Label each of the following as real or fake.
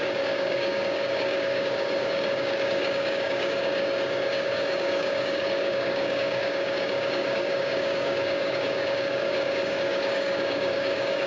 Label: fake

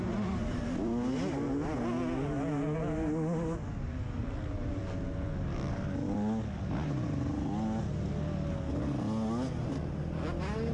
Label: real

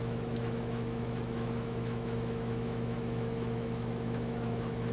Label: fake